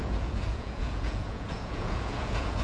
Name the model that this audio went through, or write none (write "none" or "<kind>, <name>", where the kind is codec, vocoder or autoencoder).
vocoder, Vocos